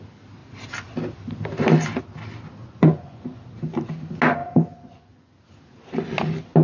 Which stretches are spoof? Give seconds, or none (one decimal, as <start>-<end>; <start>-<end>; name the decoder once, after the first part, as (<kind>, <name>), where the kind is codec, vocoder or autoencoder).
2.6-3.4 (vocoder, Vocos); 4.4-5.3